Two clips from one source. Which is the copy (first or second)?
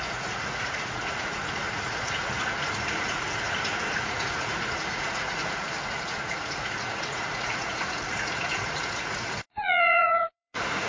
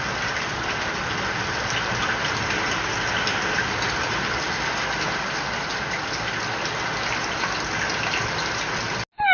first